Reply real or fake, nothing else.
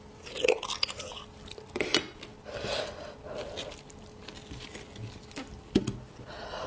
real